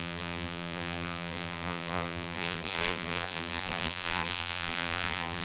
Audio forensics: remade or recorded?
remade